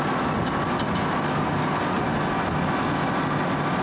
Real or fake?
real